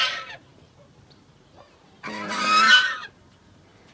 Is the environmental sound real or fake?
fake